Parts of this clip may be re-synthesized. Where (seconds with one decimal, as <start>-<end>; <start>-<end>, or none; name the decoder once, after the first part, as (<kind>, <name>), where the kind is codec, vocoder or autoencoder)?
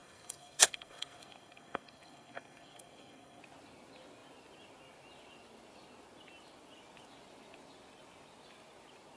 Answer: 0.0-3.4 (codec, SNAC)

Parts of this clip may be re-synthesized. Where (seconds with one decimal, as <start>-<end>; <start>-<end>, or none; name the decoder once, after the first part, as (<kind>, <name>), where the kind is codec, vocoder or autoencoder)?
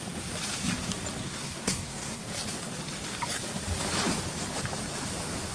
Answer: 1.2-2.2 (codec, SNAC)